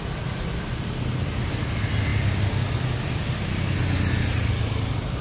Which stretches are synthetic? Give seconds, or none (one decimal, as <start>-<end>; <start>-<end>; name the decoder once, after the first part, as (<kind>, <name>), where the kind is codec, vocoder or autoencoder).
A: none